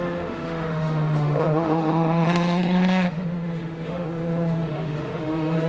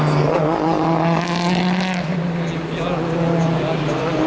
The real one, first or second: second